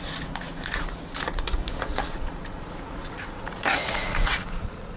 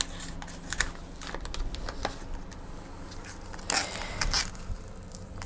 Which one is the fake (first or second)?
first